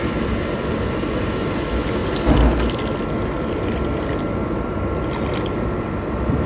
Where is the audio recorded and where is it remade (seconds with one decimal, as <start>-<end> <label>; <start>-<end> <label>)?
0.0-6.5 remade